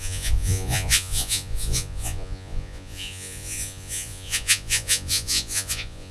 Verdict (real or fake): fake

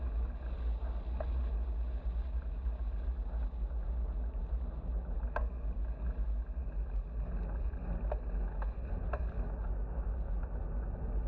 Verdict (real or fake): real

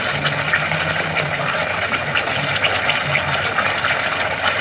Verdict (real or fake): real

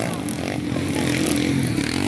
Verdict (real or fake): real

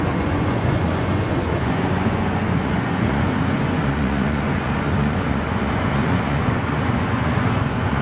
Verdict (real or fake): fake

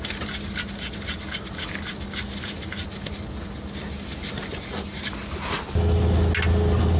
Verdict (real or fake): real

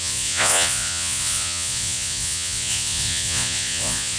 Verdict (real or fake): fake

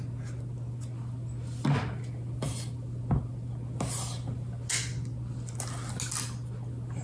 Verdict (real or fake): real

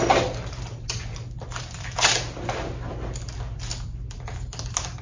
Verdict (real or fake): real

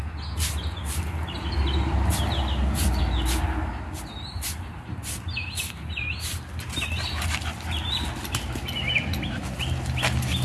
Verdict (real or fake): real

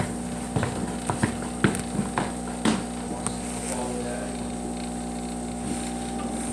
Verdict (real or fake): real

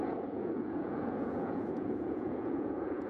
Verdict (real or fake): fake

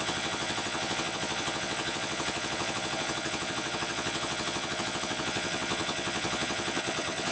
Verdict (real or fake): fake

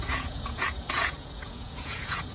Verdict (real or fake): fake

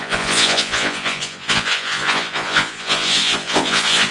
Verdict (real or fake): fake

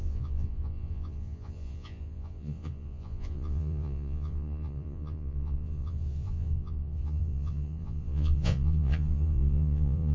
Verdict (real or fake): fake